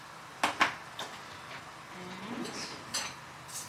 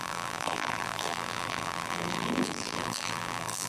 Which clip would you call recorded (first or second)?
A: first